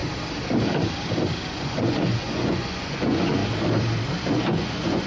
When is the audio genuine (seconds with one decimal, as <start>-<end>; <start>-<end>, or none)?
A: 0.0-1.5; 3.4-4.3